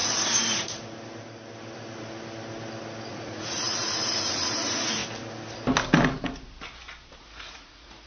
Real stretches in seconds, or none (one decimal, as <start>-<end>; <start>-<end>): 0.0-3.1; 5.0-7.2